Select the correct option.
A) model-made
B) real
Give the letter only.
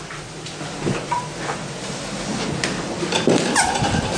B